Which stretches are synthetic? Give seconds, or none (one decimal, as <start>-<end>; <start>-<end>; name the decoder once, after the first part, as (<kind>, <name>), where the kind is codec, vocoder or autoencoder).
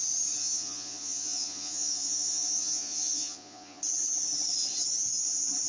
0.4-3.8 (vocoder, Vocos)